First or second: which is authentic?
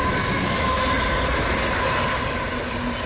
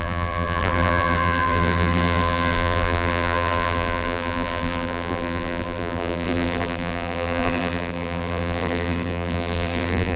first